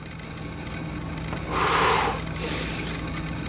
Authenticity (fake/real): real